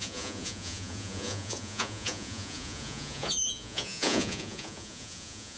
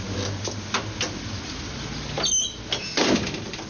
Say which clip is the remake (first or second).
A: first